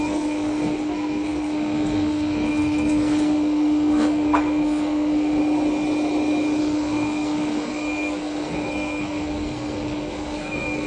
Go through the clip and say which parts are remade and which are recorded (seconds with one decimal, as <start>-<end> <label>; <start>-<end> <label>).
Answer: 0.0-5.4 remade; 5.4-6.6 recorded; 6.6-10.9 remade